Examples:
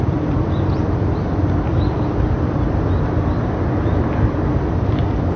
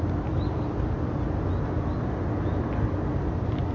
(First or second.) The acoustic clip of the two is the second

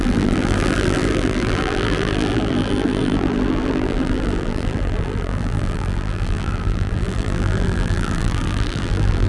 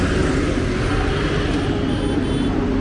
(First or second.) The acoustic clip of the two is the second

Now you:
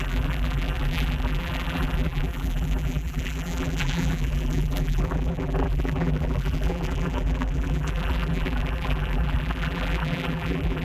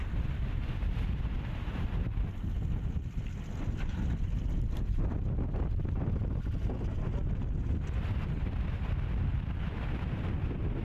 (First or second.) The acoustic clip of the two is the second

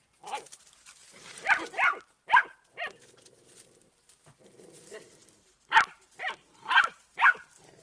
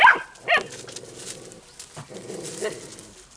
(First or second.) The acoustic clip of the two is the second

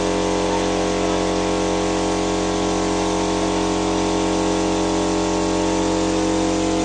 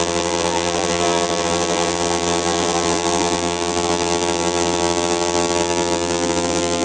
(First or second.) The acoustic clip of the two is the first